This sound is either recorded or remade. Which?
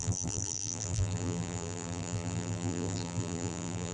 remade